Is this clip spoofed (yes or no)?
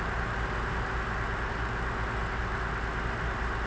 no